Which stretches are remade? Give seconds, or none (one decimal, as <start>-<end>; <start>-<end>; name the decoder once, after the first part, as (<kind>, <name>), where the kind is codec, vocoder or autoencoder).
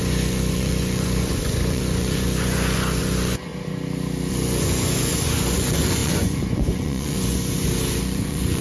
0.0-3.5 (vocoder, Vocos); 4.3-8.6